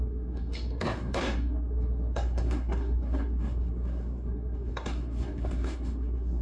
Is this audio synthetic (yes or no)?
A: yes